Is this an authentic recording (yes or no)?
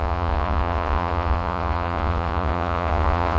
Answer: no